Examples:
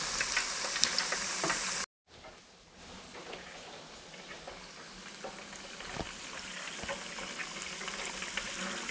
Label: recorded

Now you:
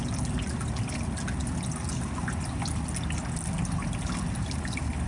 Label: recorded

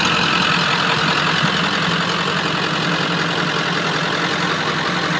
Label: recorded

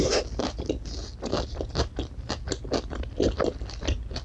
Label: recorded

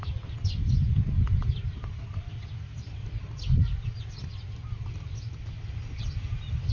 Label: recorded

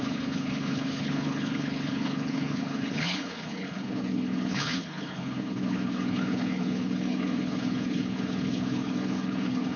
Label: remade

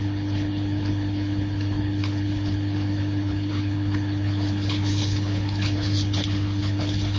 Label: remade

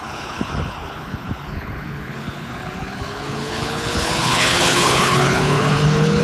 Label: remade